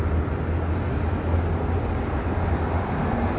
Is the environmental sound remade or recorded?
recorded